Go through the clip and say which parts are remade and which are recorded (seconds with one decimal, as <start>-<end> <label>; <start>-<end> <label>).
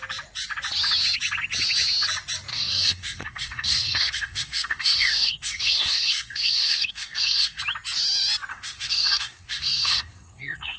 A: 0.0-2.5 recorded; 2.5-7.6 remade; 7.6-8.5 recorded; 8.5-10.8 remade